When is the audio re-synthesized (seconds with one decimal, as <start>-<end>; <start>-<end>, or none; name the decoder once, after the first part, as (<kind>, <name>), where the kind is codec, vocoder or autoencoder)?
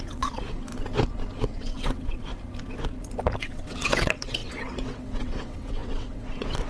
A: 0.0-0.7 (vocoder, WaveNeXt); 1.4-2.3; 3.4-6.7